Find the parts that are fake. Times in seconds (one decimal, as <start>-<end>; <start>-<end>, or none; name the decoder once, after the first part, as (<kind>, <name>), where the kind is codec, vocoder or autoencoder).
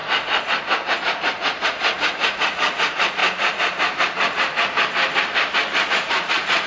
1.0-3.2 (vocoder, Vocos); 5.9-6.7